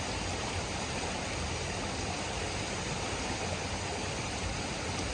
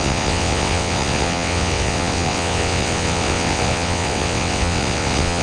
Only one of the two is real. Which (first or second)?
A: first